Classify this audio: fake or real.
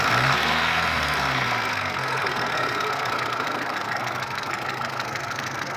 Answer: fake